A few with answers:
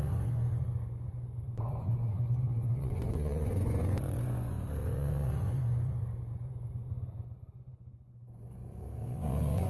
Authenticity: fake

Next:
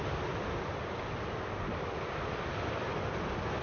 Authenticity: real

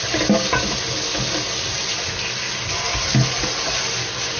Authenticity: real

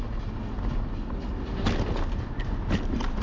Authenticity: real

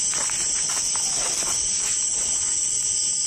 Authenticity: real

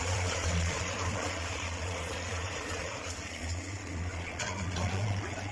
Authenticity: fake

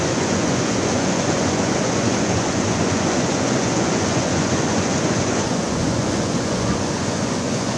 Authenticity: fake